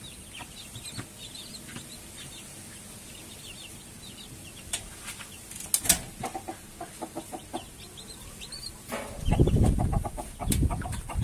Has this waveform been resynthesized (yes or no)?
no